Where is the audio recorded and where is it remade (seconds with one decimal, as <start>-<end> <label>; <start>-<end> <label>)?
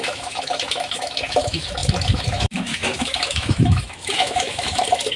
0.0-5.2 remade